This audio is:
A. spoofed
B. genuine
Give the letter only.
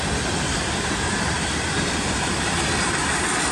B